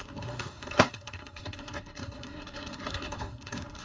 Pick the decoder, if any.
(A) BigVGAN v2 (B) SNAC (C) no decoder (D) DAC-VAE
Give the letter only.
B